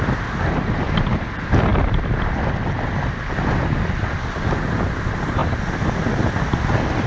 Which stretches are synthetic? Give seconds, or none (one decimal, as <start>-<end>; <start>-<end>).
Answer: 0.0-5.4; 6.6-7.1